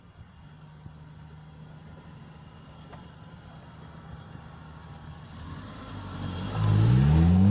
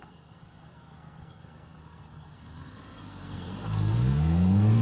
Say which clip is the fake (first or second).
second